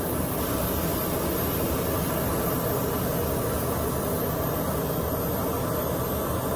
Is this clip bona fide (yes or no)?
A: yes